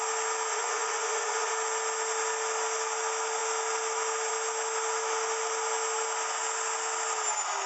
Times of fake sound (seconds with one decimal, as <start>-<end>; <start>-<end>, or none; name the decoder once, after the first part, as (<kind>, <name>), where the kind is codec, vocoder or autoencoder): 0.5-1.5 (vocoder, Vocos)